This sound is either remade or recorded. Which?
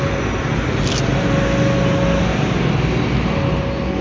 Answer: recorded